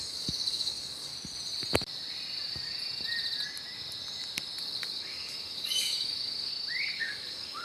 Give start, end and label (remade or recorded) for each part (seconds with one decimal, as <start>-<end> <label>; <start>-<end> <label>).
0.0-1.1 remade; 1.1-4.6 recorded; 4.6-6.5 remade; 6.5-7.0 recorded; 7.0-7.6 remade